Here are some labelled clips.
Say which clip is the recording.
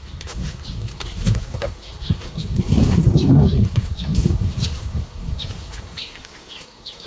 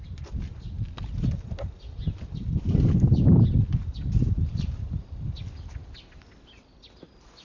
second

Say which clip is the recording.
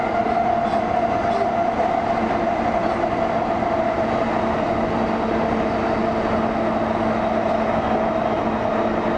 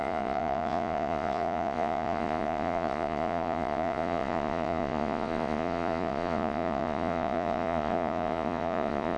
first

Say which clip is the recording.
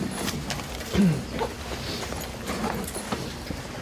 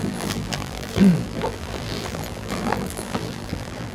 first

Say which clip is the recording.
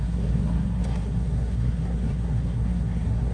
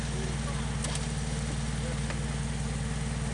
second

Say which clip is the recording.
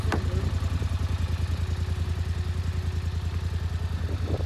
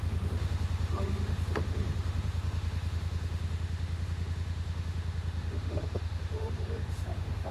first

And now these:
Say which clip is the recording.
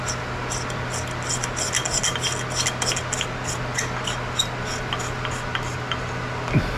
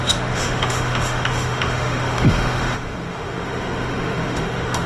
first